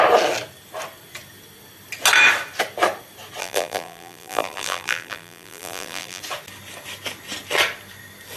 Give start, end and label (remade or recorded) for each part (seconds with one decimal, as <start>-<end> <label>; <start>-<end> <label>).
0.0-3.4 recorded; 3.4-6.2 remade; 6.2-8.4 recorded